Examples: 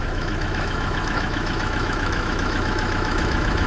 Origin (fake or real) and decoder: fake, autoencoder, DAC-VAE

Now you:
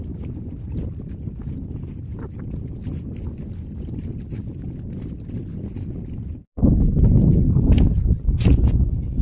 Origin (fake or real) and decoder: real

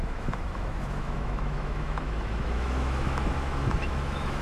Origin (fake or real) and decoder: fake, autoencoder, DAC-VAE